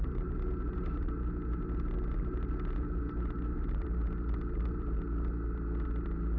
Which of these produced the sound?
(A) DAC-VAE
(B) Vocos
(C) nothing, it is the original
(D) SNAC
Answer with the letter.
C